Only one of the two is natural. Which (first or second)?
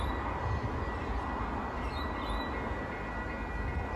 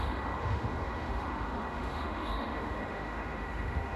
first